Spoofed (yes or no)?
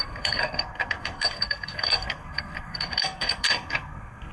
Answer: yes